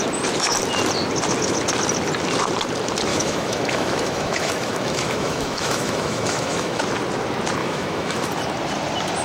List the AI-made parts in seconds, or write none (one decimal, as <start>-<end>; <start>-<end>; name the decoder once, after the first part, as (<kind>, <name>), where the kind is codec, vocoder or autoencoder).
3.1-6.8 (autoencoder, DAC-VAE); 7.6-8.3